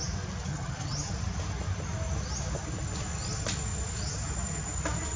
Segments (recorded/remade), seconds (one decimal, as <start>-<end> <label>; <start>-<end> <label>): 0.0-0.5 recorded; 0.5-1.1 remade; 1.1-5.2 recorded